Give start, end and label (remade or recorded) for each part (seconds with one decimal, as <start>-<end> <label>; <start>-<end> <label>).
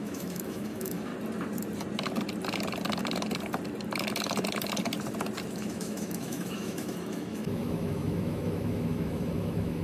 0.0-1.1 remade; 1.1-5.5 recorded; 5.5-9.8 remade